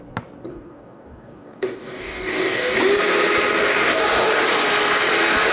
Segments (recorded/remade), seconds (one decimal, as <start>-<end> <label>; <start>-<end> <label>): 0.0-0.5 recorded; 0.5-2.8 remade; 2.8-3.6 recorded; 3.6-4.3 remade; 4.3-5.5 recorded